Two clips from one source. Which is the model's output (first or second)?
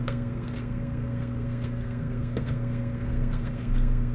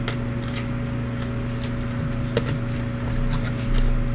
first